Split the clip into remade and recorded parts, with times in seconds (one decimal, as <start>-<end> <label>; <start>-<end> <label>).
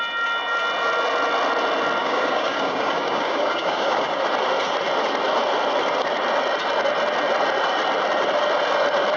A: 0.0-2.0 recorded; 2.0-4.2 remade; 4.2-9.2 recorded